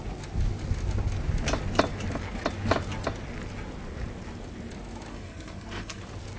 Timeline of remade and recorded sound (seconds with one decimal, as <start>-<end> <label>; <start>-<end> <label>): 0.0-5.1 recorded; 5.1-6.0 remade; 6.0-6.4 recorded